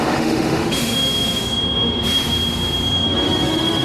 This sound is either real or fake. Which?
fake